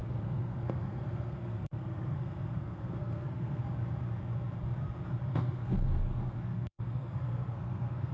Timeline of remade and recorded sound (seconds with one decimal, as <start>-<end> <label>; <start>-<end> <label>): 0.0-3.6 remade; 3.6-5.3 recorded; 5.3-8.1 remade